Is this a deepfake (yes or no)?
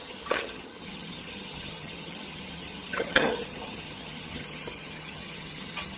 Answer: yes